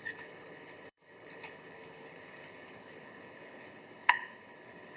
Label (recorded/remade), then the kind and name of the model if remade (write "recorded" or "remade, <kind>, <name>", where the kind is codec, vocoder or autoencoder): remade, codec, HILCodec